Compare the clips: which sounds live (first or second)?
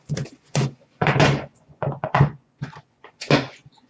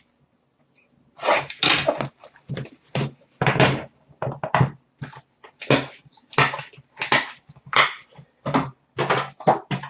second